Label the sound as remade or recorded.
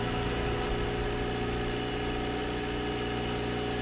recorded